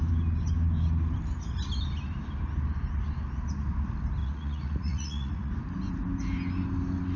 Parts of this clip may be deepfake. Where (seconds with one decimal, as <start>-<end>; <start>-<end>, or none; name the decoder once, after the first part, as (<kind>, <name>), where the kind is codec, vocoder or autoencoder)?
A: 4.2-5.5 (vocoder, Vocos)